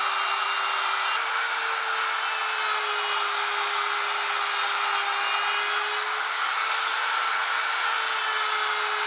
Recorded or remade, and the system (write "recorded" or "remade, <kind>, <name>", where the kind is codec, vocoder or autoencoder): recorded